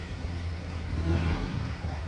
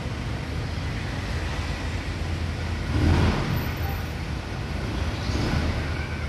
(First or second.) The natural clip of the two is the second